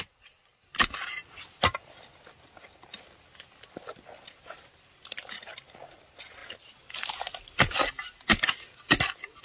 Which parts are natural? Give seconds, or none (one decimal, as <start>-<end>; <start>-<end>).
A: 0.0-9.4